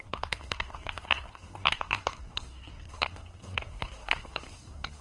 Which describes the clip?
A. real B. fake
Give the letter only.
B